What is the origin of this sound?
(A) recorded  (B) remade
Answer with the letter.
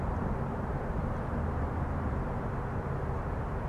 B